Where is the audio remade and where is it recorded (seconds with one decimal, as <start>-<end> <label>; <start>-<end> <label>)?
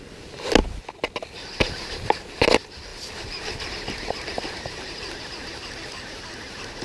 0.0-6.8 recorded